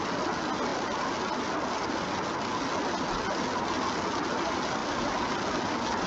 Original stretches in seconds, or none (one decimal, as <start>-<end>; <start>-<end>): 0.0-6.1